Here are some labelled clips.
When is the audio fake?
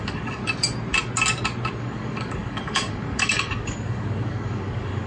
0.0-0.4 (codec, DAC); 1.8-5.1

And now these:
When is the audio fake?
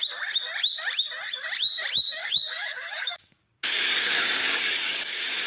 2.2-5.5 (codec, DAC)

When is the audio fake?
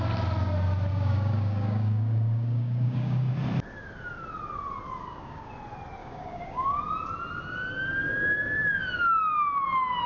0.9-3.3 (codec, DAC); 5.0-5.5; 6.0-6.8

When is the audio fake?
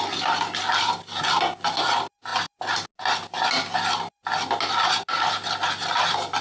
none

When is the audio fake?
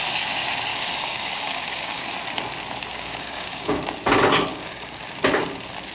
0.7-2.0 (codec, DAC); 2.9-3.8; 4.5-5.0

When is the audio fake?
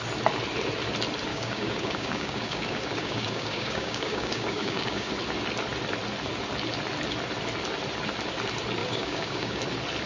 1.3-5.1 (codec, DAC); 8.8-9.6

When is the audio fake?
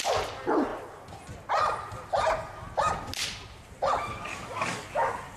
4.3-4.9 (codec, DAC)